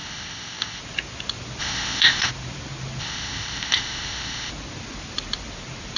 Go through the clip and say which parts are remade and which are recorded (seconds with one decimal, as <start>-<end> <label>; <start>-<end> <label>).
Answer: 0.0-0.8 remade; 0.8-1.6 recorded; 1.6-2.3 remade; 2.3-3.0 recorded; 3.0-4.5 remade; 4.5-6.0 recorded